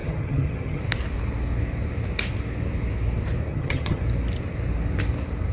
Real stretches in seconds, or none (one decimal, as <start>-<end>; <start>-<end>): 0.8-3.5; 4.0-5.5